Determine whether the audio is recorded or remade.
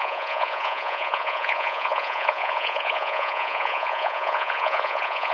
remade